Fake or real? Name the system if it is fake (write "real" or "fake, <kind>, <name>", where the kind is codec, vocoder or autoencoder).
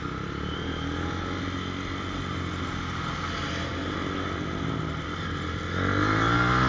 real